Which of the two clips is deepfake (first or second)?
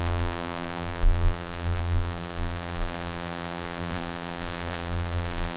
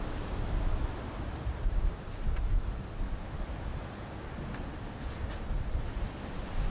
first